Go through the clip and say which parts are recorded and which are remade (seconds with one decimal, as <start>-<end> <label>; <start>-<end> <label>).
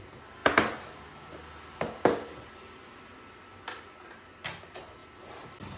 0.0-5.8 recorded